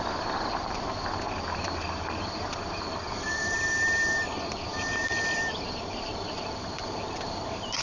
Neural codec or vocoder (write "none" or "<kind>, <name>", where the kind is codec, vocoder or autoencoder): vocoder, BigVGAN v2